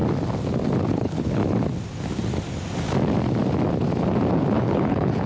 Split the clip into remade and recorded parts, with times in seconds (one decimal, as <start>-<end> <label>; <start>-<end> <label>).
0.0-0.9 recorded; 0.9-1.4 remade; 1.4-4.6 recorded; 4.6-5.3 remade